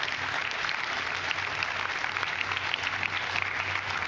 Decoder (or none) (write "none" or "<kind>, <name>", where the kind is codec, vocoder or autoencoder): none